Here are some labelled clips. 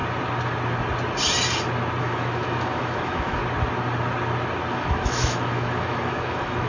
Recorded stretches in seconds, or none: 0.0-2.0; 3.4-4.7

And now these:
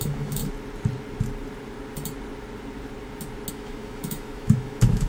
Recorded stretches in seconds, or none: 0.4-3.5

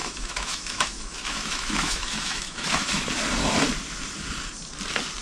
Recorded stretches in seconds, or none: 3.1-5.2

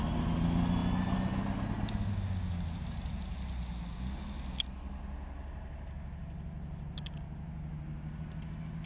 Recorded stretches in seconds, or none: 0.0-8.9

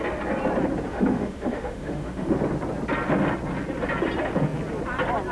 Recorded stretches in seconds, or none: 0.0-0.9; 2.3-5.3